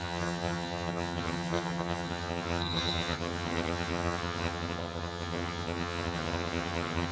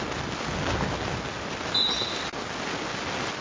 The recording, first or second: second